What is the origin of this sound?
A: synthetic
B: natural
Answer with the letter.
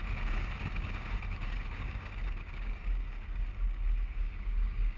A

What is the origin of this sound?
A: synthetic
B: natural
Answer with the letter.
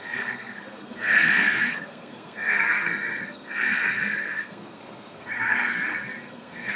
A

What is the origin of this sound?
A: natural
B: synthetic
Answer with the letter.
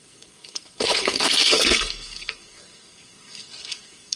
B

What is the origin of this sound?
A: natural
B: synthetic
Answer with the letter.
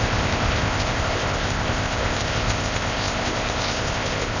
B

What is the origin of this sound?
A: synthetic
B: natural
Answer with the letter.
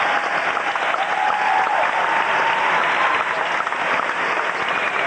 B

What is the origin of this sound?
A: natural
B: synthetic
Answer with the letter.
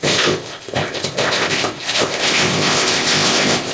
B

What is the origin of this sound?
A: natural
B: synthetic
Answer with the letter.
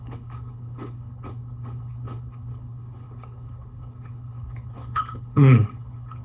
B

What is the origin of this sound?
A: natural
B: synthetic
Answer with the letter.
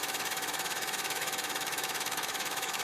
B